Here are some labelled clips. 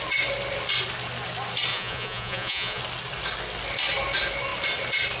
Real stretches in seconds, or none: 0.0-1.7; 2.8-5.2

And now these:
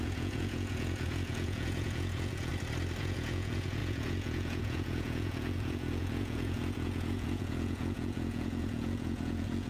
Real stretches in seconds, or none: 2.5-3.0

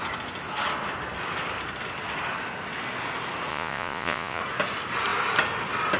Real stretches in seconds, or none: 0.0-3.5; 4.4-6.0

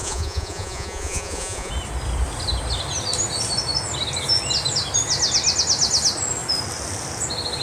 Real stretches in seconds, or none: 1.7-7.6

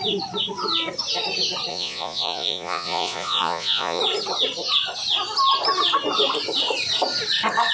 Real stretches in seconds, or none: 0.0-1.7; 4.0-7.7

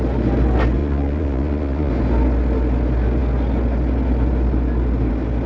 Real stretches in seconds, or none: 0.0-0.8; 1.9-5.5

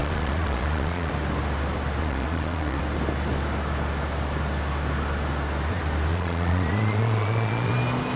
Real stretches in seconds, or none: 1.1-2.0; 2.8-6.1; 7.7-8.2